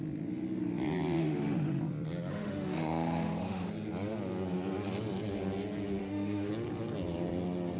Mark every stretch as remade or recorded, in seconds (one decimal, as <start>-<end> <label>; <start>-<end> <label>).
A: 0.0-1.2 recorded; 1.2-1.8 remade; 1.8-2.3 recorded; 2.3-3.7 remade; 3.7-6.0 recorded; 6.0-6.5 remade; 6.5-7.8 recorded